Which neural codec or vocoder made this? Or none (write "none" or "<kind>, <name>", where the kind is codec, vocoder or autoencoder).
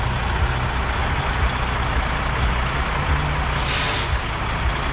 none